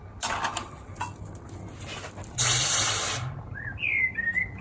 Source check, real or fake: real